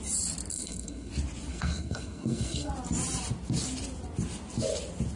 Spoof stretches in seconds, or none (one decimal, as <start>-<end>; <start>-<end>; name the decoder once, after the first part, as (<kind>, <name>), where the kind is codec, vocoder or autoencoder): 0.5-1.1 (codec, SNAC); 1.5-2.7